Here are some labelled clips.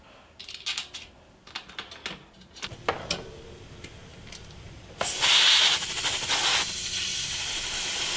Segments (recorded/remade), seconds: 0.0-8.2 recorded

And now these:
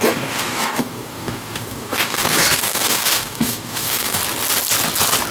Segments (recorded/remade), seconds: 0.0-4.2 remade; 4.2-5.3 recorded